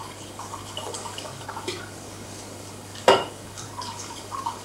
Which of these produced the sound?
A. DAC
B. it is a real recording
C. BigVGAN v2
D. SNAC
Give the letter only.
A